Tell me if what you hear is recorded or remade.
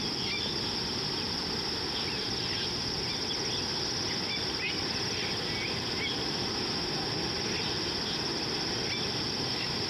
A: recorded